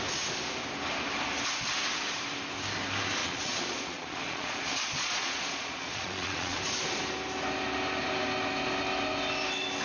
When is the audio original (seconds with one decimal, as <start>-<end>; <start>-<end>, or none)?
0.0-3.2; 6.6-9.8